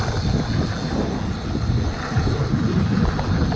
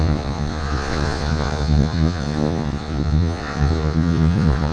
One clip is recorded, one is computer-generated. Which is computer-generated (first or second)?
second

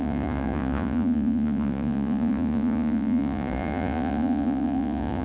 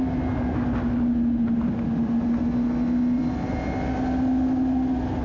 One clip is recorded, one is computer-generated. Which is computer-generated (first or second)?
first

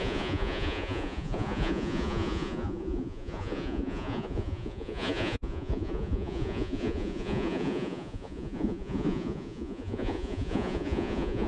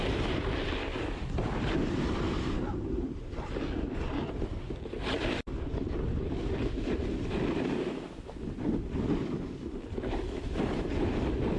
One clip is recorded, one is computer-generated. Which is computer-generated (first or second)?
first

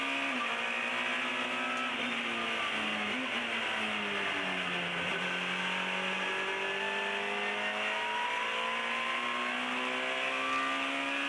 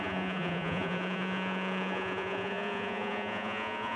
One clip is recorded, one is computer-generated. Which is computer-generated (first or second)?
second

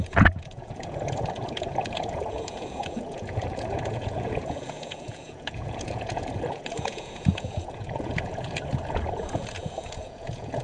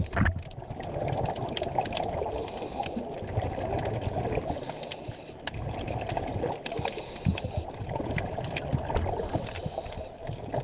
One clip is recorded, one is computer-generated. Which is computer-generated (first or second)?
first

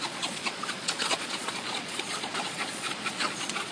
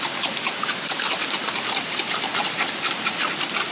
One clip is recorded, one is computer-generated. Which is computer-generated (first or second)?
first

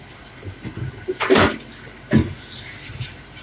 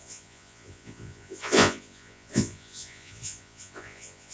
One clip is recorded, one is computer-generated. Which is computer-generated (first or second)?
second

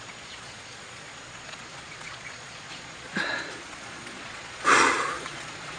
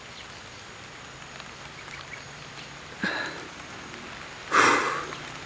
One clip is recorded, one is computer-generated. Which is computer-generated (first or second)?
first